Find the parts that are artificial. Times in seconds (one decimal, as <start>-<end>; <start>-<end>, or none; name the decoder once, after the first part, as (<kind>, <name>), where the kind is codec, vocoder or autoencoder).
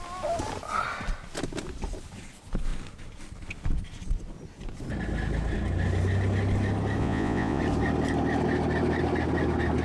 7.0-7.6 (vocoder, Vocos)